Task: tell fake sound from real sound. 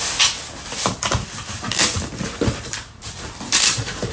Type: fake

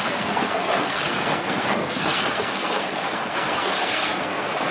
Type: fake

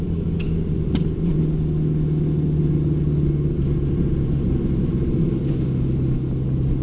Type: real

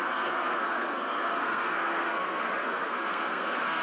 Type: fake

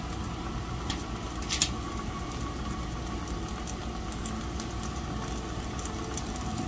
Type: real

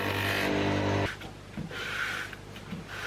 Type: real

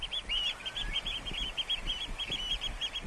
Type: fake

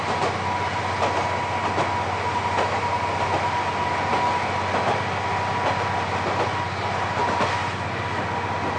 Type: real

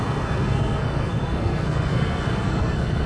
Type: fake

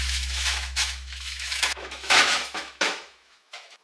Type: fake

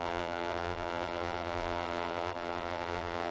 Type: fake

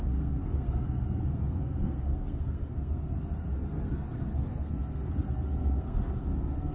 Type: fake